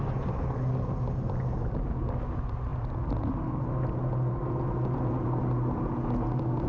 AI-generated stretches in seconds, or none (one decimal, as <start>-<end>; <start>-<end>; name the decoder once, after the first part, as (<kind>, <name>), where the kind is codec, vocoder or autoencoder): none

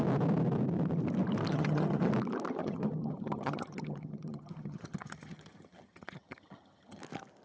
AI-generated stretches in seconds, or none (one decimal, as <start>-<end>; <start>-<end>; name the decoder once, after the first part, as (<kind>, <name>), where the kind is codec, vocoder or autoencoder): 1.5-2.1 (vocoder, HiFi-GAN); 2.6-7.0

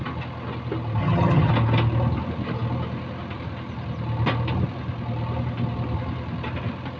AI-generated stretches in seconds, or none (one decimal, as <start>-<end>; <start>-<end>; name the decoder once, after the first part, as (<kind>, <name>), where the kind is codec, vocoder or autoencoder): 1.0-1.5 (vocoder, HiFi-GAN)

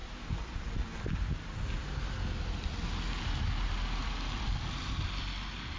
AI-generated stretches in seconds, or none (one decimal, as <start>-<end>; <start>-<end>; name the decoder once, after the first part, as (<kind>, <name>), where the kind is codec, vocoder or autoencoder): none

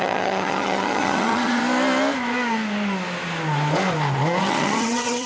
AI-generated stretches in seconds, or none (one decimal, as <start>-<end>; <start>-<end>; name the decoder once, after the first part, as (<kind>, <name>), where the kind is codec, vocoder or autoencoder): 0.0-1.6 (vocoder, HiFi-GAN); 4.4-5.3

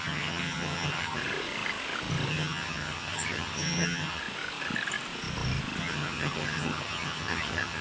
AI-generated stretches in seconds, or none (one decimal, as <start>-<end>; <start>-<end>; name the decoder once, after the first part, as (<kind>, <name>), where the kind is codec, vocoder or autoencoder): 0.0-1.2 (vocoder, HiFi-GAN); 2.3-4.2; 5.8-7.8